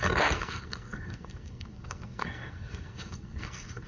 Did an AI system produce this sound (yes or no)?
yes